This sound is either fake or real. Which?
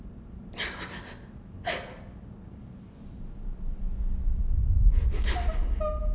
real